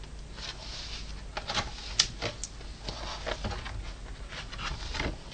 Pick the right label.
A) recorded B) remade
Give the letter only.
A